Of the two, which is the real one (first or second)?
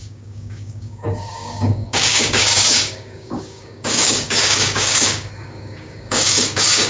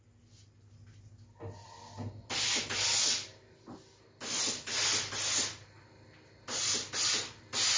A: second